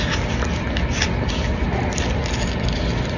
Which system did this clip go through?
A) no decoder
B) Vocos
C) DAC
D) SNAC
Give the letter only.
A